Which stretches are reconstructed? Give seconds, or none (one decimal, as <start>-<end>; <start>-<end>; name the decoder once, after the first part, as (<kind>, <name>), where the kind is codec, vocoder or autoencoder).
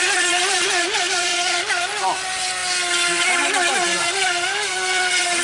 0.0-1.3 (vocoder, BigVGAN v2); 2.0-2.6; 4.7-5.4